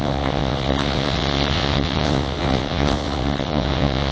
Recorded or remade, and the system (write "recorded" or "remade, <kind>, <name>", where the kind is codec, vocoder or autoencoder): remade, vocoder, WaveNeXt